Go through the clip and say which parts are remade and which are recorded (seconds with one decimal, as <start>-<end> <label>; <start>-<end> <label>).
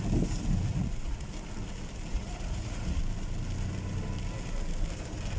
0.0-0.7 recorded; 0.7-1.3 remade; 1.3-2.1 recorded; 2.1-3.0 remade; 3.0-5.4 recorded